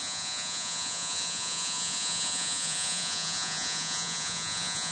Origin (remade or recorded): remade